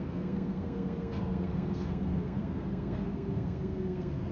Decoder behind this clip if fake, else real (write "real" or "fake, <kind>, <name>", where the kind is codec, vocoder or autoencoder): fake, codec, SNAC